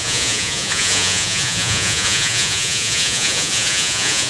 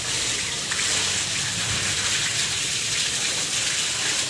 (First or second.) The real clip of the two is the second